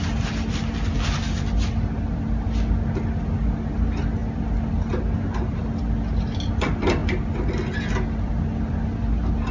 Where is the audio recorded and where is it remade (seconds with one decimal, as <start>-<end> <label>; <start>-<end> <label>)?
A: 0.0-9.5 recorded